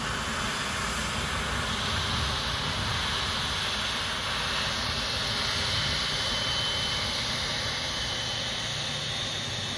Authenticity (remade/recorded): recorded